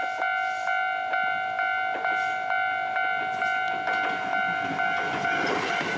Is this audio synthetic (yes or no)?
no